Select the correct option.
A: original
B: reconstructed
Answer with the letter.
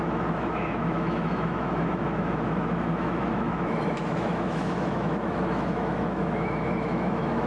B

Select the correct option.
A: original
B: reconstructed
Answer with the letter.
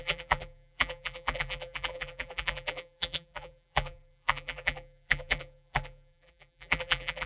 B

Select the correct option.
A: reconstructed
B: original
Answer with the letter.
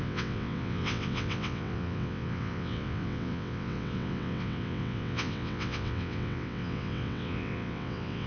A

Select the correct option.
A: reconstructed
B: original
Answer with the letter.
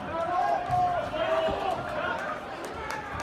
A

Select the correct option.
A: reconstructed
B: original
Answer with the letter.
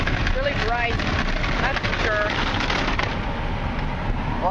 B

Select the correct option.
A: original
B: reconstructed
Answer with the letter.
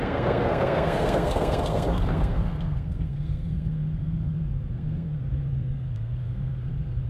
B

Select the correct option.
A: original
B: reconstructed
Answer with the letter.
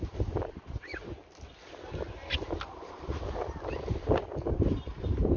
A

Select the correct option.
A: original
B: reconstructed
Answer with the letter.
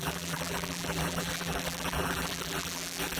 B